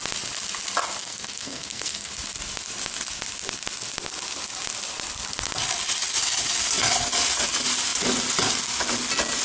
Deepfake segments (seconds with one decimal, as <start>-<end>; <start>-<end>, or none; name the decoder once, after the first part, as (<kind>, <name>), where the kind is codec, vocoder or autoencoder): 1.0-2.1 (codec, SNAC)